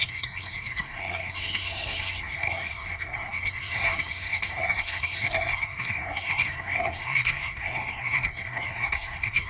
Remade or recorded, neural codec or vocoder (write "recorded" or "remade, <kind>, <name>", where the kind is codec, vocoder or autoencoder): remade, codec, SNAC